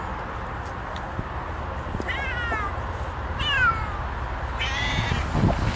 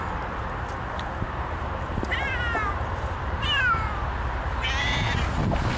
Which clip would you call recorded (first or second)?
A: first